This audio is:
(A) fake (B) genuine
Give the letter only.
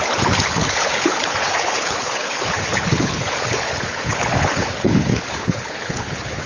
A